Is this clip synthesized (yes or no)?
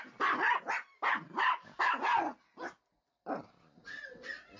no